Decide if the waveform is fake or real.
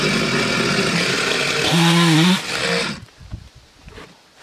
real